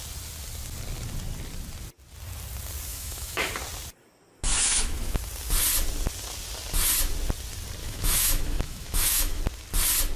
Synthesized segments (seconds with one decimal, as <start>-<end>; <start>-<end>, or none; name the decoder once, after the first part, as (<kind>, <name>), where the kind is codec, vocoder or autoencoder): 2.9-3.5 (autoencoder, DAC-VAE); 4.5-5.2; 7.8-9.4